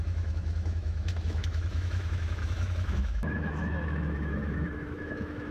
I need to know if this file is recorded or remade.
remade